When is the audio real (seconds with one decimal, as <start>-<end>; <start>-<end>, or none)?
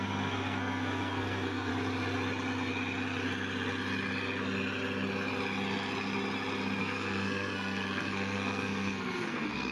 1.7-6.8